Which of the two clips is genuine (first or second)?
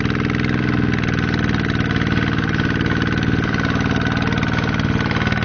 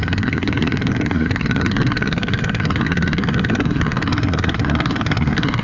first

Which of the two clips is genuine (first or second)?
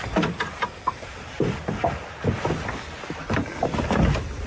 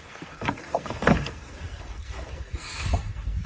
first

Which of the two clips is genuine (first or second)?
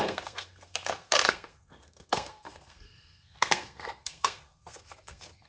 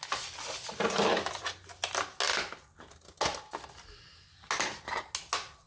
second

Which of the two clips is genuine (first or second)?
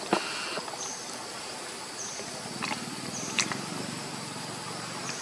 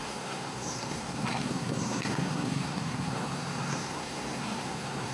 first